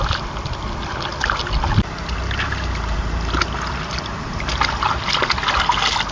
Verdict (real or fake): real